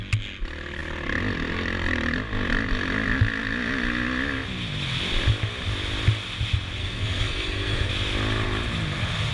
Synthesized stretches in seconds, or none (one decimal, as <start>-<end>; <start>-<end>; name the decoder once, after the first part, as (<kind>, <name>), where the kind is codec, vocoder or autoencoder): 6.8-7.9 (codec, SNAC)